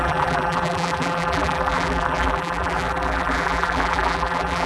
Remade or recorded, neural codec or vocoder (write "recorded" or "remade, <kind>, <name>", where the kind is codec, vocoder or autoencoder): remade, vocoder, BigVGAN v2